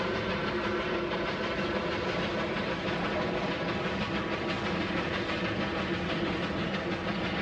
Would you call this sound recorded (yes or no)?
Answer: yes